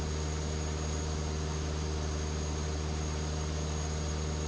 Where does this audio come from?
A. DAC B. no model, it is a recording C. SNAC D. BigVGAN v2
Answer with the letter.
B